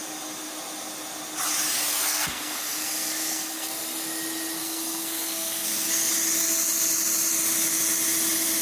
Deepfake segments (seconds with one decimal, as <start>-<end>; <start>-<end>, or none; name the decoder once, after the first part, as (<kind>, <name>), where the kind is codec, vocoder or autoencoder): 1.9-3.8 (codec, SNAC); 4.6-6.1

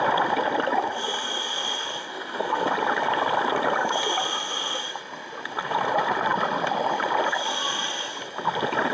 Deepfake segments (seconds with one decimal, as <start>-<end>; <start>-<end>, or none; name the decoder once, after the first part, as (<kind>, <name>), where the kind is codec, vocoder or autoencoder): 1.8-2.7 (codec, SNAC)

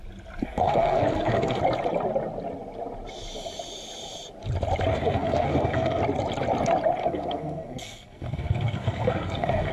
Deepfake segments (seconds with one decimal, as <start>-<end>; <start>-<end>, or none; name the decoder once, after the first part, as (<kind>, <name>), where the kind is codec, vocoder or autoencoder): 0.4-1.6 (codec, SNAC); 4.9-6.0; 7.0-9.7

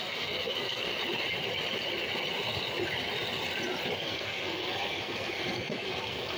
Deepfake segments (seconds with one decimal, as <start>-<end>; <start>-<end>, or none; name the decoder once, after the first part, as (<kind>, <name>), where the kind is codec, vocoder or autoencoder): 0.0-0.9 (codec, SNAC); 4.0-6.4

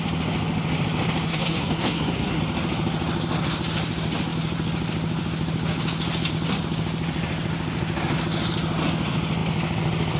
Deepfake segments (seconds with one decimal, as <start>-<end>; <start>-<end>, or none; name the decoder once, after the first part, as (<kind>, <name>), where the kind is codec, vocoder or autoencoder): 1.3-2.4 (codec, SNAC)

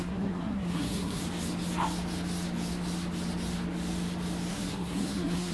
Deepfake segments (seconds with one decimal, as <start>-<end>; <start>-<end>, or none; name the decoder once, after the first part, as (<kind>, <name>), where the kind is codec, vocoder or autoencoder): 0.0-1.2 (codec, SNAC); 4.5-5.5

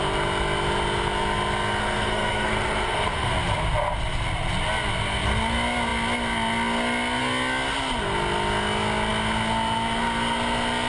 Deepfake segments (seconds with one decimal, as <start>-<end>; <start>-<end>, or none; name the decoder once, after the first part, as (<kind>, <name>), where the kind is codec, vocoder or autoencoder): 1.8-3.3 (codec, SNAC)

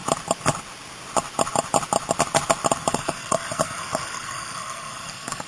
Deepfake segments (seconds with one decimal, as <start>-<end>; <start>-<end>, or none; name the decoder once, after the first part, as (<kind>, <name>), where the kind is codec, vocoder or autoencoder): 2.9-5.5 (codec, SNAC)